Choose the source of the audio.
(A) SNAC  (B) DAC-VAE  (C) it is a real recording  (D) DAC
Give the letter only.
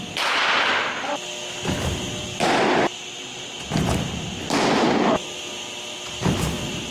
C